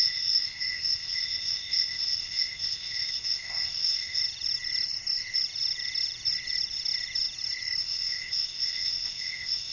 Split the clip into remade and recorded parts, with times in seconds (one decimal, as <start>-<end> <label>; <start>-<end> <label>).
0.0-4.2 remade; 4.2-7.8 recorded; 7.8-9.7 remade